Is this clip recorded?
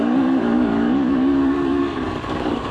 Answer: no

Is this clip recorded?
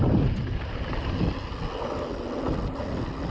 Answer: yes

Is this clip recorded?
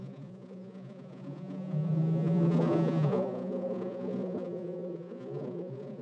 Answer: no